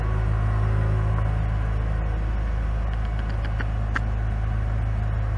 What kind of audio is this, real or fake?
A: real